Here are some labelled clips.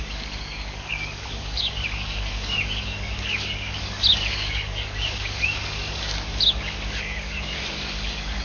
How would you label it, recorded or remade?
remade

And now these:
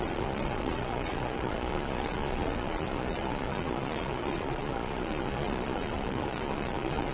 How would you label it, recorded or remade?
remade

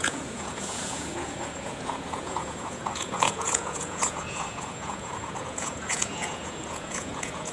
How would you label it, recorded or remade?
remade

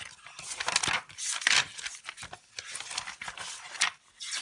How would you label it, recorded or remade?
recorded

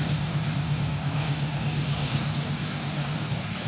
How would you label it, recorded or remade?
remade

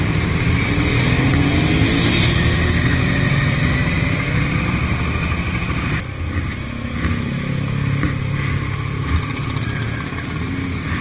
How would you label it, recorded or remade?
recorded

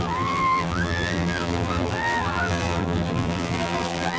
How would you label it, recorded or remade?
remade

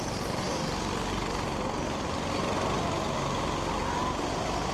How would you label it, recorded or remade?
recorded